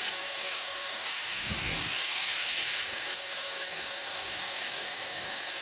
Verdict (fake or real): fake